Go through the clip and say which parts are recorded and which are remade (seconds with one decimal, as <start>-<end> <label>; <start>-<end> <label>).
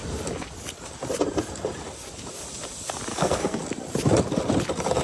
0.0-3.1 recorded; 3.1-3.6 remade; 3.6-5.0 recorded